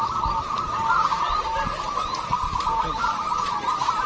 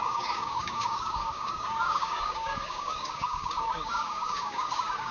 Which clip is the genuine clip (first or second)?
first